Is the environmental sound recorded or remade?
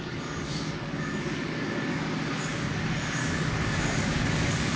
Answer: remade